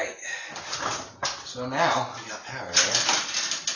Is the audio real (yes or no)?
yes